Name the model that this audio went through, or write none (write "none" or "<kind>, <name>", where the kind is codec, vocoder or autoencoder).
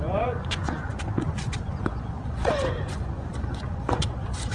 vocoder, Vocos